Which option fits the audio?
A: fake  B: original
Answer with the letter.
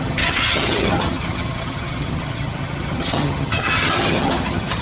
A